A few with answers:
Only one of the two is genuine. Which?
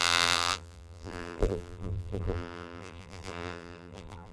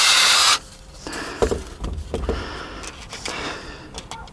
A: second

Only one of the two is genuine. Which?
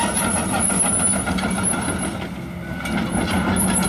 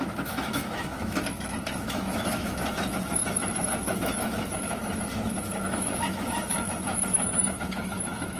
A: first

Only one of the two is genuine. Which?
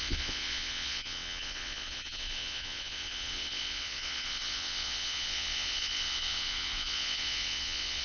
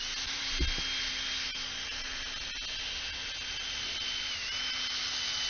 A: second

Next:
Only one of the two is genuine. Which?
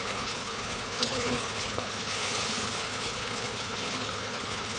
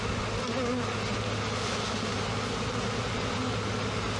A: second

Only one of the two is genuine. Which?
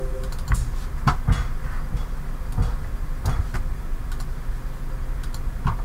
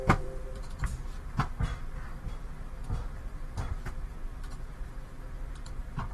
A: first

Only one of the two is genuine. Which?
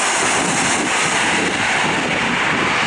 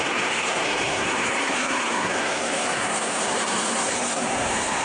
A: first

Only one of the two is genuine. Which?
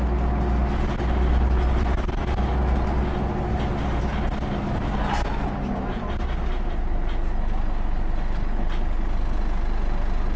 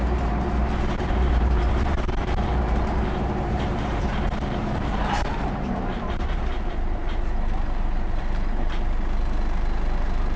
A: first